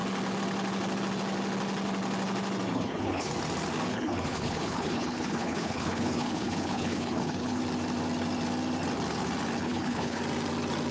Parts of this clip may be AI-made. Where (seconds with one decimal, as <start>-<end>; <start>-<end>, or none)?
2.7-3.3; 3.9-7.6; 9.6-10.2